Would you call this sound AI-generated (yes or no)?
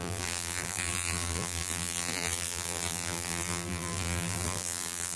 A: yes